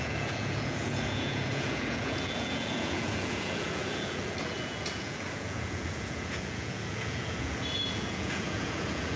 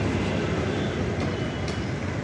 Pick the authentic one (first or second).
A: second